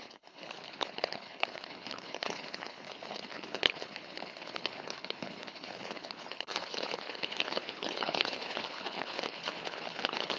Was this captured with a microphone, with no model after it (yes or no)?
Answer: no